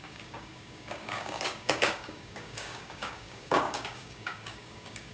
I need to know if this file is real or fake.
fake